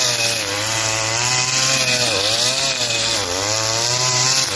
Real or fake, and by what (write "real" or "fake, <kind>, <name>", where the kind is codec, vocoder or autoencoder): real